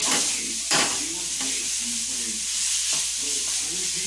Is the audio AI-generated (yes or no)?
yes